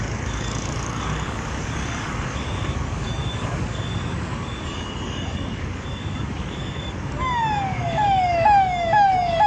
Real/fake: fake